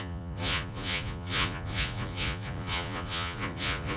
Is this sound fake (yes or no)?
yes